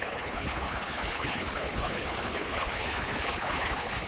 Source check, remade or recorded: remade